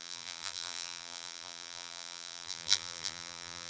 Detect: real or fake fake